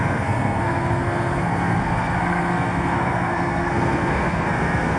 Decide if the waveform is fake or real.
fake